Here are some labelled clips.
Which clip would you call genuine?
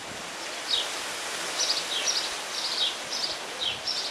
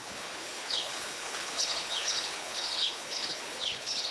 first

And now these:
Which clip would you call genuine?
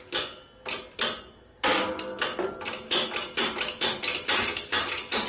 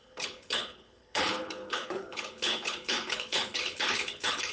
first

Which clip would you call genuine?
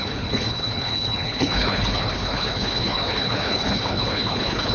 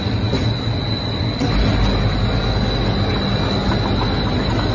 second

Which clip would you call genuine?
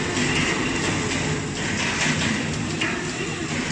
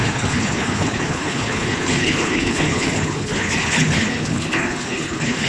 first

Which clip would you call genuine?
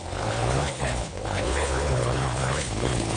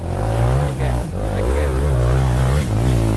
second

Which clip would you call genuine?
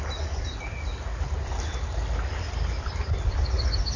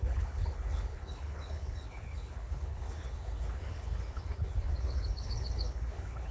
first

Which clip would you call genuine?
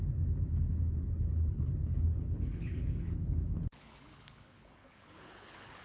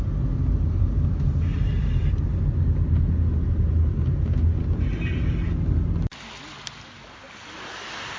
second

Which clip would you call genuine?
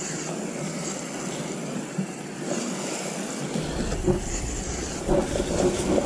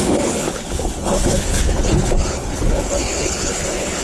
first